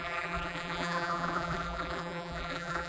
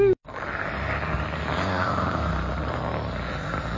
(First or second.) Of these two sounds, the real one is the second